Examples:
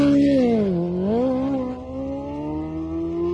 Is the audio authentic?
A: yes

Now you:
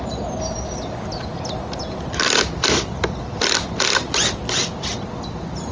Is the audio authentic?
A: yes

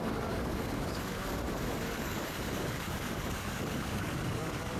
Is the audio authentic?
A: no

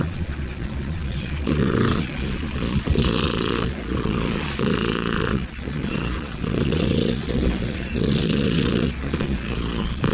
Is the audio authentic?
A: no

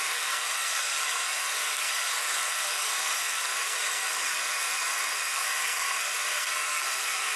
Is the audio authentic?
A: no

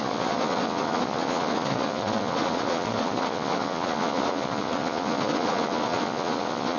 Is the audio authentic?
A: no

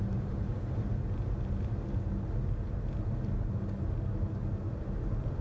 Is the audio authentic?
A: yes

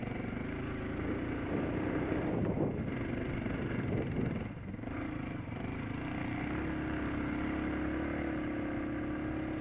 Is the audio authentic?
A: yes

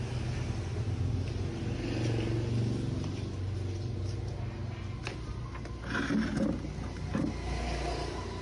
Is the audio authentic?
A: yes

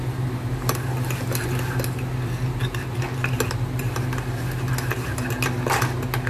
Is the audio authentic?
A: yes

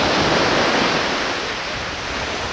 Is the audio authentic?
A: yes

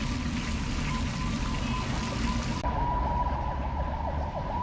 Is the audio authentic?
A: yes